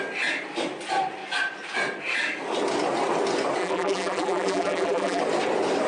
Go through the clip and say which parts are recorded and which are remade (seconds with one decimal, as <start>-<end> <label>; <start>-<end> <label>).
0.0-3.6 recorded; 3.6-5.2 remade; 5.2-5.9 recorded